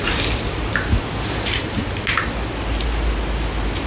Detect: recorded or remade recorded